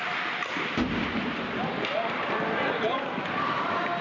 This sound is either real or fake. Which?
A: fake